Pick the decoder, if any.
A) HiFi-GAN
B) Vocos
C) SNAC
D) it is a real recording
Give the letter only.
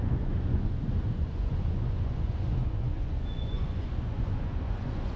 B